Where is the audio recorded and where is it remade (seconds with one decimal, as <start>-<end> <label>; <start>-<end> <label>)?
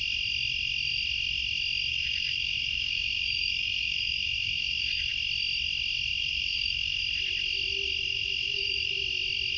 0.0-1.9 recorded; 1.9-5.1 remade; 5.1-6.1 recorded; 6.1-7.0 remade; 7.0-8.1 recorded; 8.1-8.9 remade; 8.9-9.6 recorded